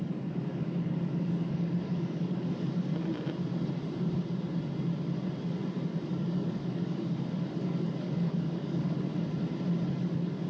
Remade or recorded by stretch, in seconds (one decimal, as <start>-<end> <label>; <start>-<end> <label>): 0.0-2.9 remade; 2.9-6.1 recorded; 6.1-9.1 remade; 9.1-10.0 recorded; 10.0-10.5 remade